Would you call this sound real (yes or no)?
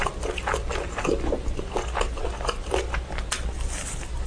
yes